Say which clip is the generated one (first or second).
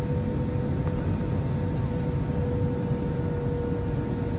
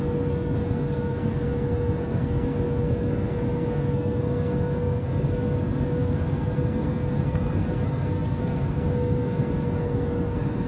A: second